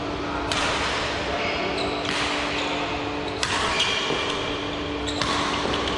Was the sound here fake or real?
real